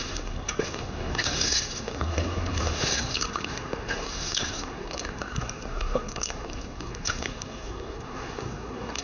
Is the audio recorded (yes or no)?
no